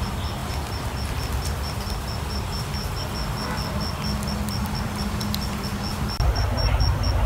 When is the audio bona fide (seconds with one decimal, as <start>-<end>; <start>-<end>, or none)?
0.0-0.4; 3.0-5.9; 6.7-7.3